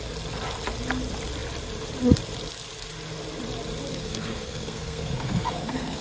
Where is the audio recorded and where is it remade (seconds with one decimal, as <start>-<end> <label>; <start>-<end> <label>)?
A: 0.0-3.9 recorded; 3.9-6.0 remade